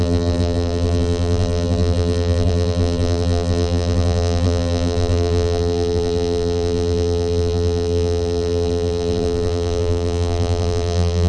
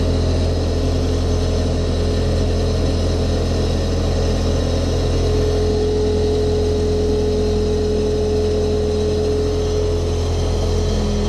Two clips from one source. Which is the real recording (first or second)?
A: second